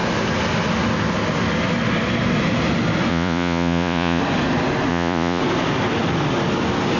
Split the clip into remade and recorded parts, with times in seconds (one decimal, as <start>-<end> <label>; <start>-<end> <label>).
0.0-3.1 recorded; 3.1-4.2 remade; 4.2-4.9 recorded; 4.9-5.4 remade; 5.4-7.0 recorded